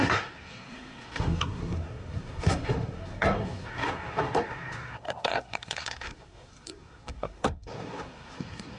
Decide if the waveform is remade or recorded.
remade